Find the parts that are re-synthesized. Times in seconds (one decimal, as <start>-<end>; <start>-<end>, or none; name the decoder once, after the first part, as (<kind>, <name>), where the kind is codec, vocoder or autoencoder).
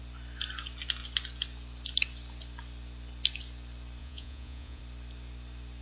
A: 4.0-4.8 (vocoder, Vocos)